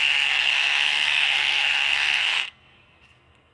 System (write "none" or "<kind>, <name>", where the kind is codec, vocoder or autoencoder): codec, SNAC